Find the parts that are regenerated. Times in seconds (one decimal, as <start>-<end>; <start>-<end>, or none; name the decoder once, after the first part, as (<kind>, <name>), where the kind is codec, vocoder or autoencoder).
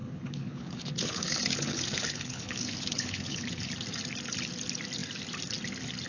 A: 0.0-3.7 (codec, HILCodec)